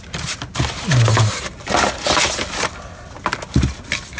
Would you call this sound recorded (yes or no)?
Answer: yes